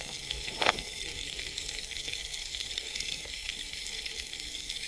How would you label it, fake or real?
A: fake